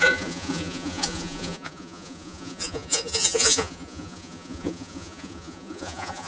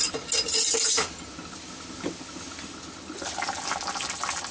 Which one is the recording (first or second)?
second